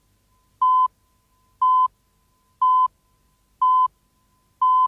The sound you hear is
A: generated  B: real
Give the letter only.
B